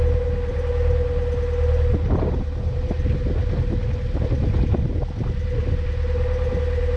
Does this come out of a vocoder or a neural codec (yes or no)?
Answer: no